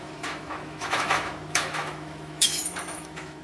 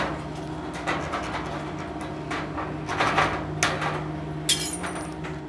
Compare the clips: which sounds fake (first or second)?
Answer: first